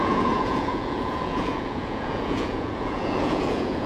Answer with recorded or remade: remade